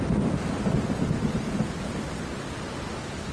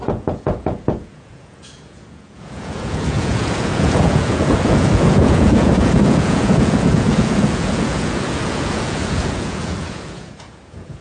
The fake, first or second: second